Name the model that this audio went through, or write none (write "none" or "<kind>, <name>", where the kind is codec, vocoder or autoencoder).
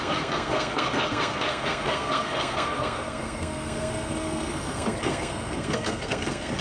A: codec, SNAC